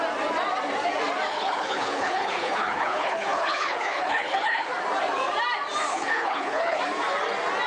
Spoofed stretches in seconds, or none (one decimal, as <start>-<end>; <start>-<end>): 1.3-4.7; 5.9-6.8